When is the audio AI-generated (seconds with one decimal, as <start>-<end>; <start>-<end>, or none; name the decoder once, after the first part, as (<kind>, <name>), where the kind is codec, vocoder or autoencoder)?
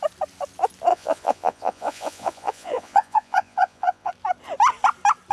0.9-4.1 (vocoder, Vocos)